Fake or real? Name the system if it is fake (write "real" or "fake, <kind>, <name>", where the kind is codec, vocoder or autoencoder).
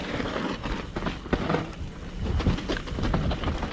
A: real